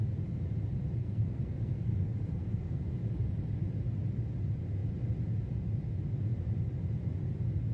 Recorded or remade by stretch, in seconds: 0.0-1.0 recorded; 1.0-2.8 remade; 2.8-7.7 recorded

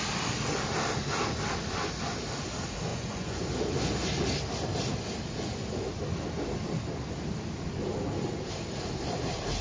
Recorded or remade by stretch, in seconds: 0.0-2.9 recorded; 2.9-3.4 remade; 3.4-9.6 recorded

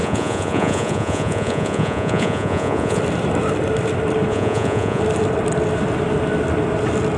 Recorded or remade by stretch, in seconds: 0.0-3.0 remade; 3.0-4.3 recorded; 4.3-5.0 remade; 5.0-7.2 recorded

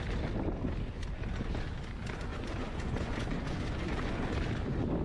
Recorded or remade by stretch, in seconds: 0.0-2.3 recorded; 2.3-4.3 remade; 4.3-5.0 recorded

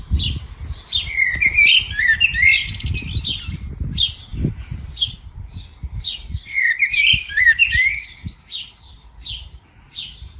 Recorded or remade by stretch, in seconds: 0.0-10.4 recorded